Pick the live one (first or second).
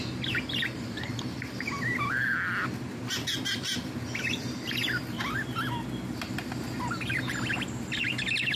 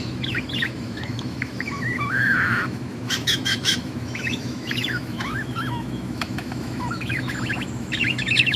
first